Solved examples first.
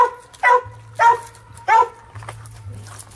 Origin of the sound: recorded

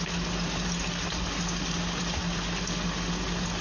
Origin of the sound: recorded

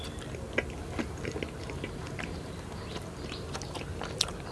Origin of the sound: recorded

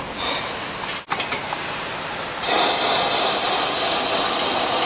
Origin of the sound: recorded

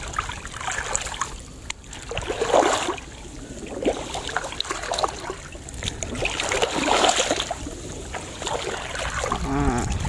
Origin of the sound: recorded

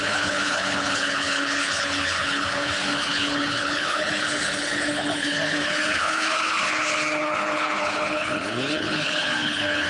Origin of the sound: remade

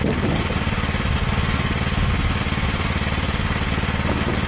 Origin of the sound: recorded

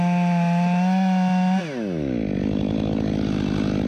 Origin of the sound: recorded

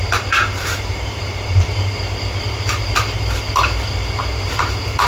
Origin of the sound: remade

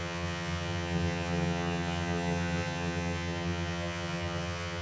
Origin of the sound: remade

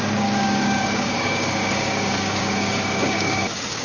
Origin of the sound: remade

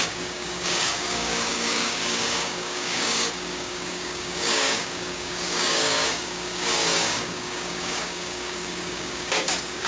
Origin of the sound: remade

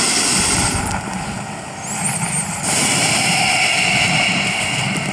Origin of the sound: recorded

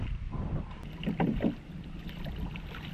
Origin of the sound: recorded